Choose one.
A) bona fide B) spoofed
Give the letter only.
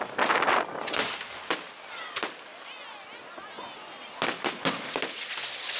A